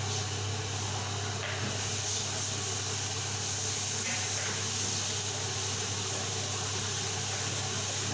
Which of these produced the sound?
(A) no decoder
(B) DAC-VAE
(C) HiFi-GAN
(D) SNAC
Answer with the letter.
A